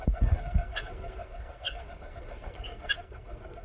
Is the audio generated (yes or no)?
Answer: yes